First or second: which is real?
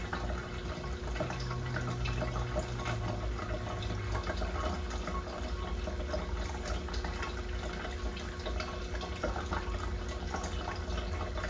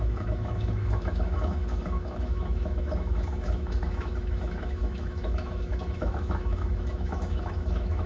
first